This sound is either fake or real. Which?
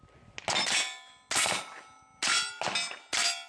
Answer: real